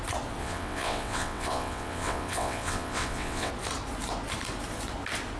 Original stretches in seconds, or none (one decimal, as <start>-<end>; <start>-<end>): 0.0-0.4; 3.5-5.4